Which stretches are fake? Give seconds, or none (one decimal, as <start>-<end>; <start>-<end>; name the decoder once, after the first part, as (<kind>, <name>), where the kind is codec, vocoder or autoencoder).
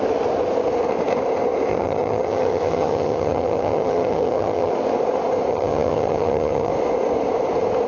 1.7-4.7 (vocoder, HiFi-GAN); 5.5-6.7